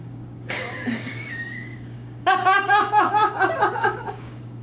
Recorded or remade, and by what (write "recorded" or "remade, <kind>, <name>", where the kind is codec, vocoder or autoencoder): remade, codec, DAC